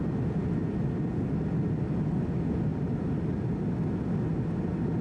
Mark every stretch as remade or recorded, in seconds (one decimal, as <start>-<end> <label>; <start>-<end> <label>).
0.0-2.7 recorded; 2.7-3.3 remade; 3.3-5.0 recorded